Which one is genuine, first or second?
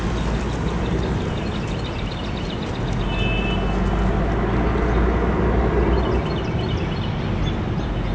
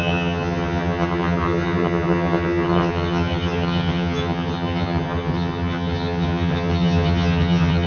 first